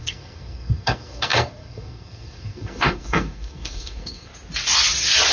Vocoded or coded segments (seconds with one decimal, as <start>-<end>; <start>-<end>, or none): 0.0-4.3